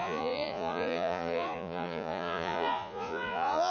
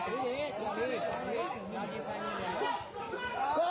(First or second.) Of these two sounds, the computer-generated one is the first